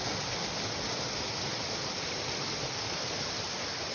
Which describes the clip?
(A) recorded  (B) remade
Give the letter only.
A